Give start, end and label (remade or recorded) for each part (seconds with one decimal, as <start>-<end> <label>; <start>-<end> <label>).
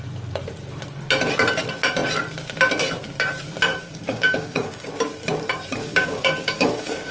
0.0-3.7 recorded; 3.7-4.9 remade; 4.9-5.8 recorded; 5.8-7.1 remade